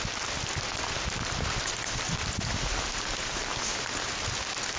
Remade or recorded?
recorded